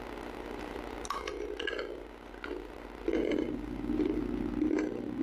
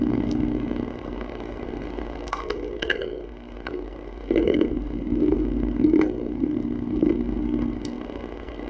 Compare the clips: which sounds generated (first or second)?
second